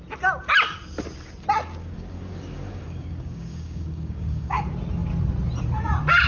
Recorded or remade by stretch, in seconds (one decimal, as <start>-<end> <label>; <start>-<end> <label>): 0.0-1.8 recorded; 1.8-4.6 remade; 4.6-6.3 recorded